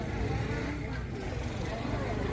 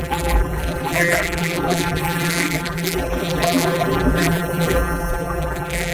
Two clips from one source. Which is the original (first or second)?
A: first